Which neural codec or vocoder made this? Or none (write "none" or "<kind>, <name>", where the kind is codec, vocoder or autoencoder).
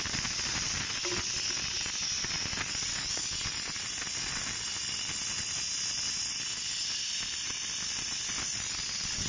none